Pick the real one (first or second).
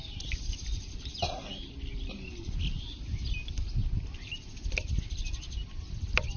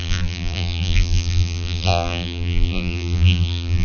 first